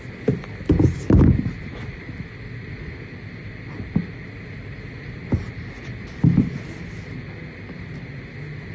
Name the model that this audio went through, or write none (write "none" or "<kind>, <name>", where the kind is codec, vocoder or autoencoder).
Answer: none